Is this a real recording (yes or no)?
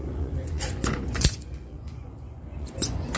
no